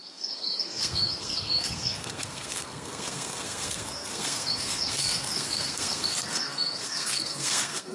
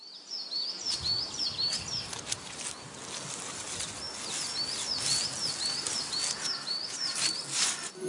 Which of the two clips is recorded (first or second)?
second